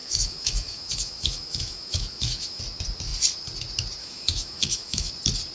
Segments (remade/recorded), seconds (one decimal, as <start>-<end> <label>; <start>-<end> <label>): 0.0-2.6 remade; 2.6-4.0 recorded; 4.0-5.1 remade; 5.1-5.5 recorded